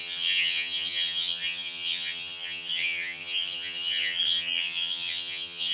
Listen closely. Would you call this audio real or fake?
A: fake